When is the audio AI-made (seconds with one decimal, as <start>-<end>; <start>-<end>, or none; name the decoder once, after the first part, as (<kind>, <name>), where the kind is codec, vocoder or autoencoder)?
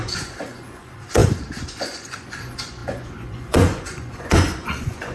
0.0-5.1 (vocoder, Vocos)